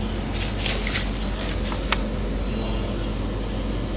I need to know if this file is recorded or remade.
recorded